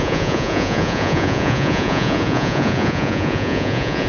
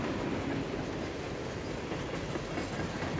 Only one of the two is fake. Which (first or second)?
first